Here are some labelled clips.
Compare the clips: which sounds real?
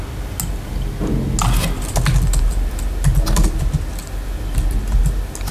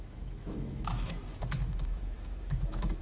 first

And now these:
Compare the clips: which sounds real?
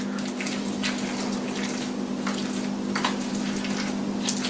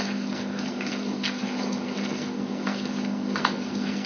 first